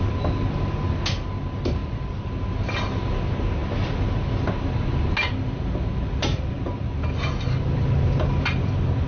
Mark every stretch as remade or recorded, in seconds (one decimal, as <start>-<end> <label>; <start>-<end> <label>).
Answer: 0.0-1.8 recorded; 1.8-2.3 remade; 2.3-9.1 recorded